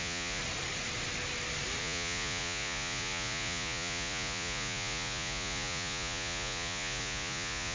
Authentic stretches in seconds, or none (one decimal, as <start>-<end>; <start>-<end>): 0.4-1.8